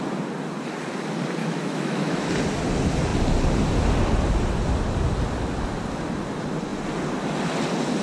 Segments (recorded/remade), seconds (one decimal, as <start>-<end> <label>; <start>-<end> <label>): 0.0-1.4 recorded; 1.4-2.3 remade; 2.3-8.0 recorded

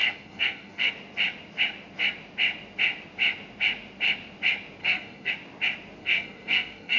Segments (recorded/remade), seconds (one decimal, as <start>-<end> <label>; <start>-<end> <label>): 0.0-0.9 remade; 0.9-4.8 recorded; 4.8-5.3 remade; 5.3-6.0 recorded; 6.0-7.0 remade